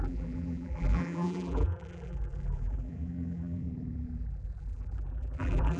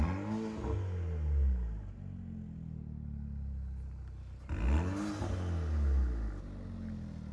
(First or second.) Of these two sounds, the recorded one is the second